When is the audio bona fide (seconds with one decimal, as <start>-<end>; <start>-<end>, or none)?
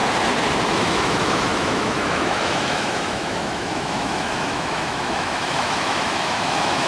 0.0-0.7